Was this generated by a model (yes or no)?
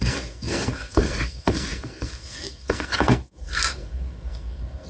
yes